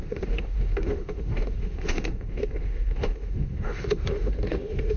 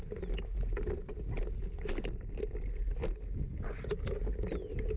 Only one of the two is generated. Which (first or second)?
first